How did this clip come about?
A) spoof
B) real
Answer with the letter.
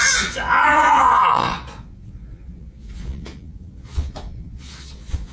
A